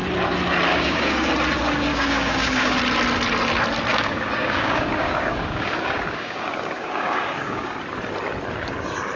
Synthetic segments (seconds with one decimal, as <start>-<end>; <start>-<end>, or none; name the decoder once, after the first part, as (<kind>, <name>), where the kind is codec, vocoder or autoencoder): 0.7-1.3 (codec, DAC); 1.9-2.8; 3.9-7.8